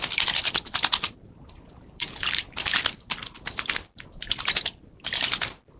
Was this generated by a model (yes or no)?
no